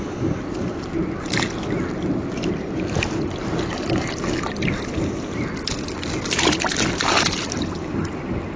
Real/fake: real